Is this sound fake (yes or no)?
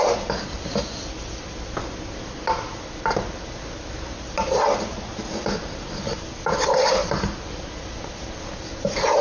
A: no